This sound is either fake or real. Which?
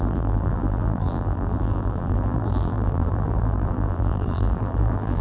fake